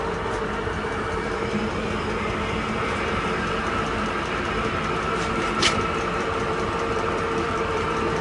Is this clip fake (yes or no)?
no